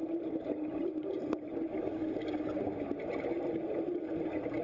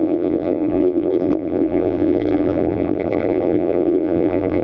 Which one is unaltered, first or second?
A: first